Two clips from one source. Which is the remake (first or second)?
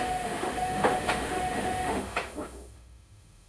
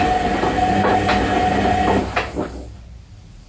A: first